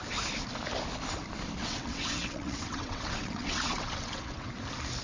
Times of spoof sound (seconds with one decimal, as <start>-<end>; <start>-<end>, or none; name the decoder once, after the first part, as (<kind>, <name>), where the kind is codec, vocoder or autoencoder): 1.6-4.6 (vocoder, WaveNeXt)